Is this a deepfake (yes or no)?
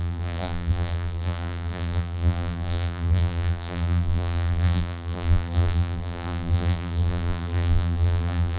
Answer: yes